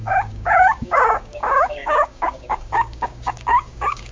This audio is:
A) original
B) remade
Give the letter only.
B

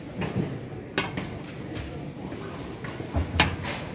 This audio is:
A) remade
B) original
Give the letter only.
B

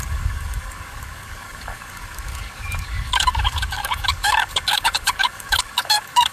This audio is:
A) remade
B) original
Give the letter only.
A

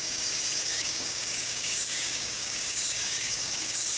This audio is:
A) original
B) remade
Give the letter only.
B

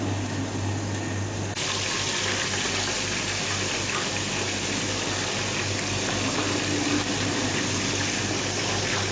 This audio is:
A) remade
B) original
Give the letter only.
B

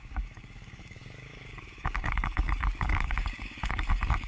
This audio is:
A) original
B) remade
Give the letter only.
B